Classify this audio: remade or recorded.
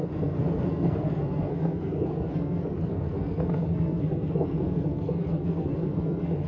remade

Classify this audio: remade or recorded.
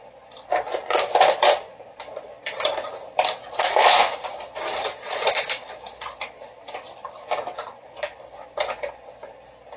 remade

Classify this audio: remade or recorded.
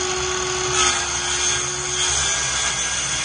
recorded